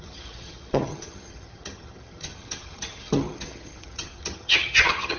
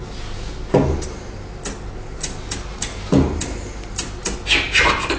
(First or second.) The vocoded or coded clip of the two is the first